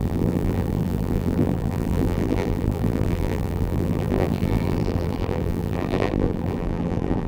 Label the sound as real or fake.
fake